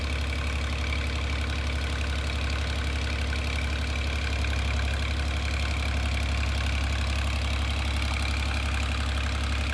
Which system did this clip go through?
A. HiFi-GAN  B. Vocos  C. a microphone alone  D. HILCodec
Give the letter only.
C